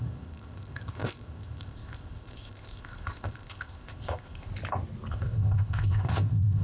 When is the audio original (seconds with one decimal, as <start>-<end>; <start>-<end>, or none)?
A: 4.5-5.1